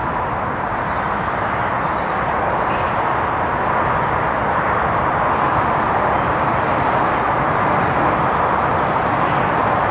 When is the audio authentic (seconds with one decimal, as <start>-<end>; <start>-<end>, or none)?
0.0-9.9